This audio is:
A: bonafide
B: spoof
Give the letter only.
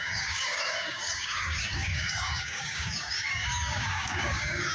B